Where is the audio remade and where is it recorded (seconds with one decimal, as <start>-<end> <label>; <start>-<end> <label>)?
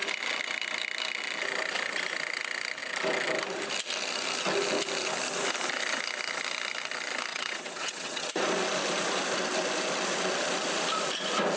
0.0-7.3 recorded; 7.3-8.3 remade; 8.3-11.6 recorded